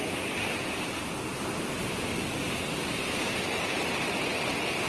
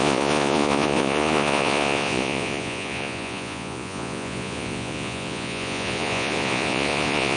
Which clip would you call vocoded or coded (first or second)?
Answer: second